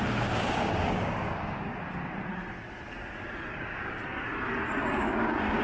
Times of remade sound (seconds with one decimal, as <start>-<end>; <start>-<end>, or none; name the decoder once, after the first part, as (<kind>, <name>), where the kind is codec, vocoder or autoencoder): 0.0-1.7 (codec, DAC); 3.5-4.0; 4.9-5.6